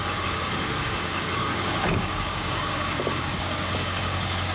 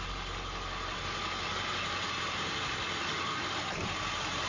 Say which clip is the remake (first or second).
first